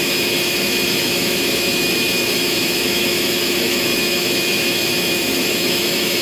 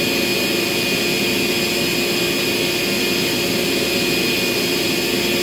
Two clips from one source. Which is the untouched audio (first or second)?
second